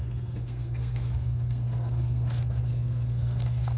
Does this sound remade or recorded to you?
remade